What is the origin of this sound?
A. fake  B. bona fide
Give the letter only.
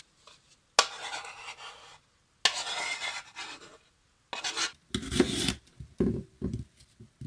B